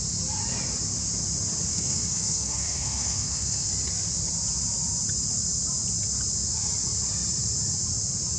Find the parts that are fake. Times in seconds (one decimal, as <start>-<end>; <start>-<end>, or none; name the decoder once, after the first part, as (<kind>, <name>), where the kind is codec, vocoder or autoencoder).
1.7-3.7 (codec, SNAC)